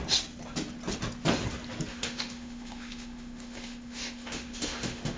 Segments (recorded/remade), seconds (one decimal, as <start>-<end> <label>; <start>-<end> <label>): 0.0-1.9 recorded; 1.9-5.2 remade